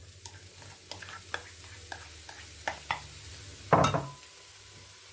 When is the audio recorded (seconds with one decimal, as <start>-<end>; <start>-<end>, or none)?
0.0-5.1